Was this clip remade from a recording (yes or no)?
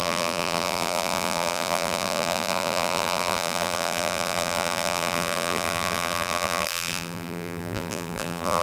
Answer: yes